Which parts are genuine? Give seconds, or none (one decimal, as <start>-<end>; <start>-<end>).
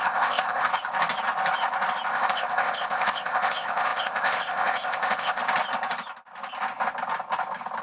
0.7-2.1; 5.4-7.8